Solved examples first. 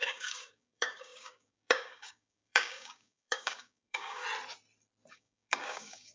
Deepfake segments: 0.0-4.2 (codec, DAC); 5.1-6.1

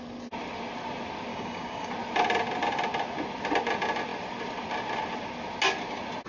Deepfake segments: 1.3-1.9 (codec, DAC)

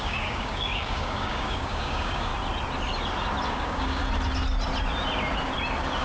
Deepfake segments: 0.0-2.3 (codec, DAC); 3.5-4.0

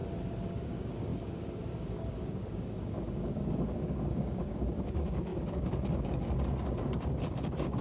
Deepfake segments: 0.5-7.8 (codec, DAC)

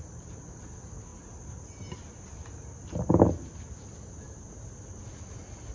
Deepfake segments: none

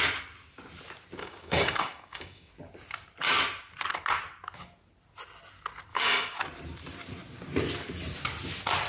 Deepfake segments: 1.2-2.5 (codec, DAC); 5.9-6.4